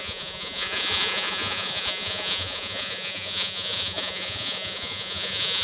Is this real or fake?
fake